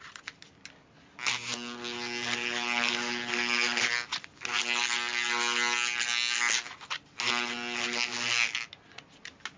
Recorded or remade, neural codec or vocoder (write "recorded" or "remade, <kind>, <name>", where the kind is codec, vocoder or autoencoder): recorded